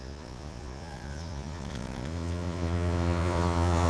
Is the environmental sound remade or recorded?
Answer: remade